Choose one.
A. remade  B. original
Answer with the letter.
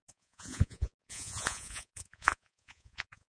A